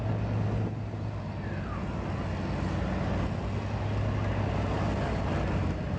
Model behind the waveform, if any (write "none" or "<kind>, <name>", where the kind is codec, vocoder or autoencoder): none